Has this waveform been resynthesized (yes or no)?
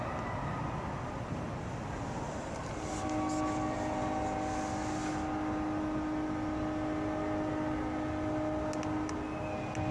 no